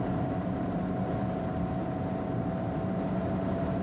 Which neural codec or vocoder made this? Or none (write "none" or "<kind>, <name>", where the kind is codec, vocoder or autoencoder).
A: vocoder, BigVGAN v2